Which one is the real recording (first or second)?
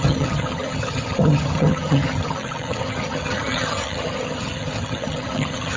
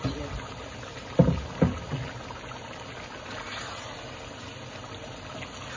second